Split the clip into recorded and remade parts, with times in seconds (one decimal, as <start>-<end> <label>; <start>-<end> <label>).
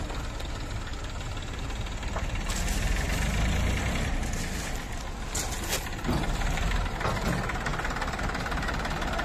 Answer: 0.0-5.9 recorded; 5.9-6.7 remade; 6.7-7.7 recorded; 7.7-8.2 remade; 8.2-9.2 recorded